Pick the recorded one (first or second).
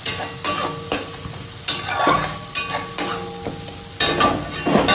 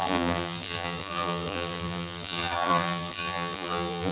first